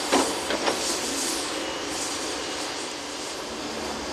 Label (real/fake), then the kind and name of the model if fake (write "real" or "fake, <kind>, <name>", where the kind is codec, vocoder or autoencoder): real